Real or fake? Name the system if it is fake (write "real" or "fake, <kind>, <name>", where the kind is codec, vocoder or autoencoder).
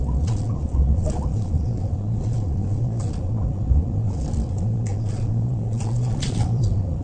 fake, vocoder, Vocos